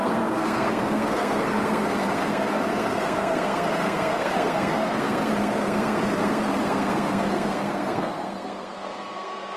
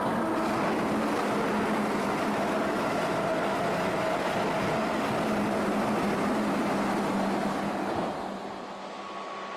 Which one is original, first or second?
second